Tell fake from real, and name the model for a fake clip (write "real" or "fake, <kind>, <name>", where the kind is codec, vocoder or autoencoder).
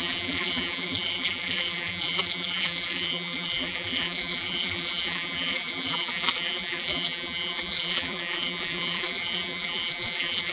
fake, vocoder, BigVGAN v2